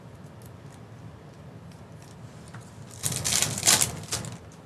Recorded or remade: recorded